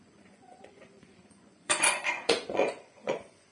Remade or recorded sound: remade